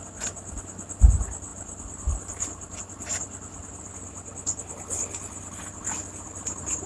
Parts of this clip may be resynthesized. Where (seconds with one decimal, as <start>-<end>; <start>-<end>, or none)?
1.5-2.8

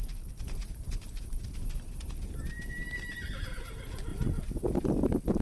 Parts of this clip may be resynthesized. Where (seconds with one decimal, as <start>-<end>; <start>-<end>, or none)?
0.6-3.5; 4.1-4.9

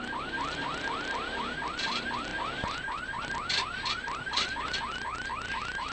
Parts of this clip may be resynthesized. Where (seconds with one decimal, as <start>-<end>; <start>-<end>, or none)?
0.0-2.3; 3.2-5.9

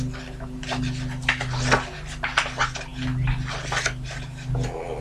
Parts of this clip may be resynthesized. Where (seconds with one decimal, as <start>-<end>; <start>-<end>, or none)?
none

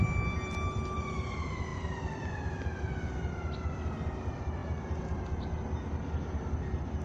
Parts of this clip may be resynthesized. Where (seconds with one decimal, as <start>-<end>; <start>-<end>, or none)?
1.7-2.8

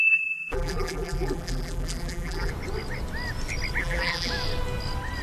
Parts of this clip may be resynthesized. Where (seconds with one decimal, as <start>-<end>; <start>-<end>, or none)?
0.0-2.5; 3.8-4.3